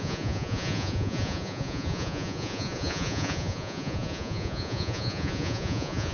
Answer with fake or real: fake